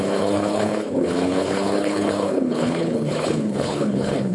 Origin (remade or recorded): remade